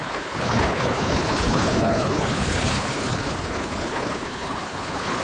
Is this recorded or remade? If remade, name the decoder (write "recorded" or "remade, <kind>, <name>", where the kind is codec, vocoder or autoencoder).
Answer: remade, codec, HILCodec